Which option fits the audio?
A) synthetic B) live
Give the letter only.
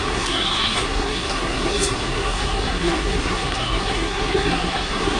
A